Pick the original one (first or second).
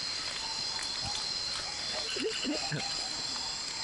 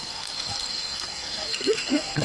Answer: first